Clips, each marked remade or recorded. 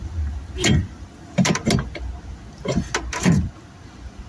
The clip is recorded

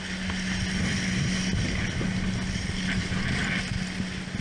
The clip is recorded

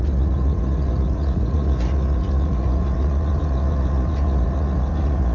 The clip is remade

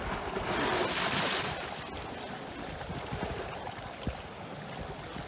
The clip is recorded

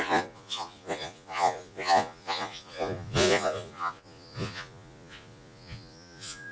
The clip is remade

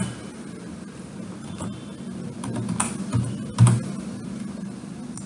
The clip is recorded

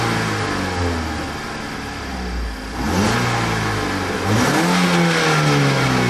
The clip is recorded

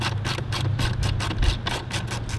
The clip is recorded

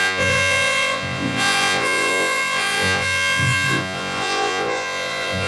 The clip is remade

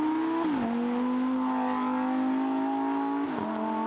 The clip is recorded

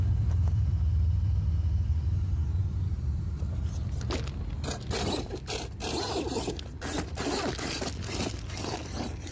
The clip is recorded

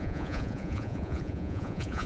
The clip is remade